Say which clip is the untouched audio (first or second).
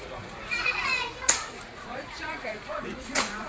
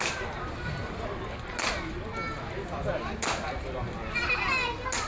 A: second